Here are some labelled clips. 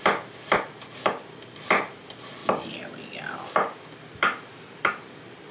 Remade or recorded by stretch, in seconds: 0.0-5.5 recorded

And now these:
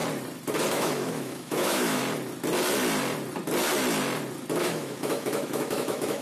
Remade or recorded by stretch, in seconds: 0.0-0.7 recorded; 0.7-2.0 remade; 2.0-4.6 recorded; 4.6-6.2 remade

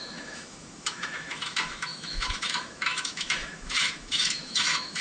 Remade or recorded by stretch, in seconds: 0.0-5.0 remade

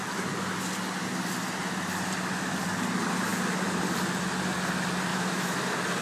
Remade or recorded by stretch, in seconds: 0.0-5.1 recorded; 5.1-5.6 remade; 5.6-6.0 recorded

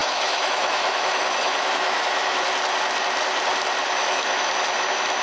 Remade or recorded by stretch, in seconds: 0.0-2.4 remade; 2.4-3.8 recorded; 3.8-4.5 remade; 4.5-5.2 recorded

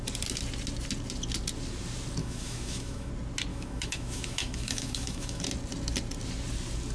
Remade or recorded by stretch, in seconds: 0.0-2.2 recorded; 2.2-3.1 remade; 3.1-3.5 recorded; 3.5-5.4 remade; 5.4-6.9 recorded

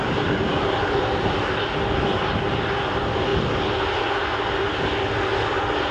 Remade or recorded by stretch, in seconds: 0.0-5.9 recorded